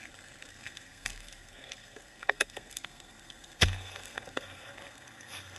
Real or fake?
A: fake